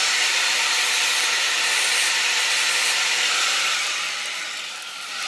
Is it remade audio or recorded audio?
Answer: remade